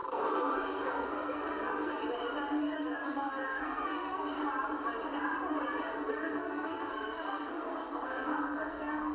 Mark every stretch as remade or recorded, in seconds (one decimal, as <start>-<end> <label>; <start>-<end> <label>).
0.0-2.0 remade; 2.0-2.6 recorded; 2.6-4.4 remade; 4.4-6.1 recorded; 6.1-9.1 remade